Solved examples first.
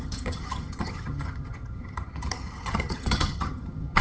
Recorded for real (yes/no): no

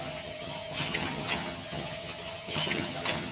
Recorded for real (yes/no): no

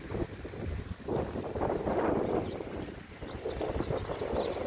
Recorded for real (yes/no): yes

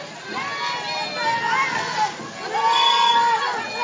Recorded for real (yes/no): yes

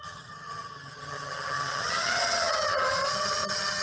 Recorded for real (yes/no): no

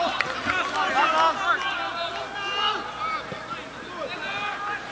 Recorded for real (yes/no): yes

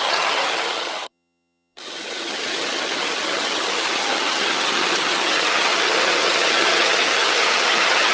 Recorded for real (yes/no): no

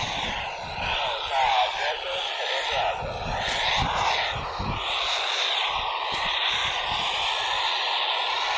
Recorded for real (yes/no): yes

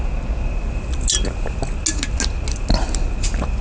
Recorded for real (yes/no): yes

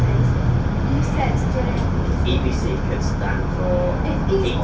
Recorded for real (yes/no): yes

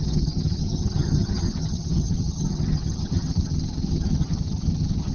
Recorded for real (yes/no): no